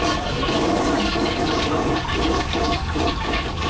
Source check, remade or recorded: remade